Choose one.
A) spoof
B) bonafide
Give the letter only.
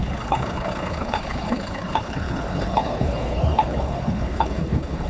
A